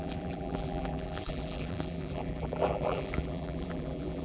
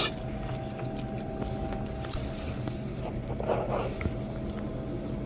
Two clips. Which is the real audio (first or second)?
second